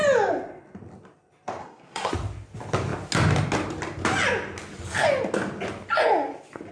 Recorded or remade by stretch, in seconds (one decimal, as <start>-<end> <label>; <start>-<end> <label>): 0.0-1.6 recorded; 1.6-2.1 remade; 2.1-6.7 recorded